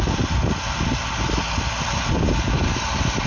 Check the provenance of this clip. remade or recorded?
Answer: recorded